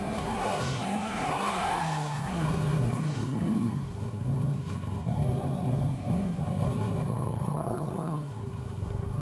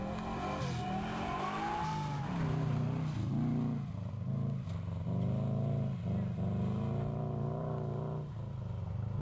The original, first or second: second